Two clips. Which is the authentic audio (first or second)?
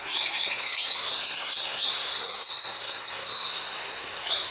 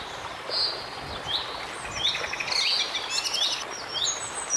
second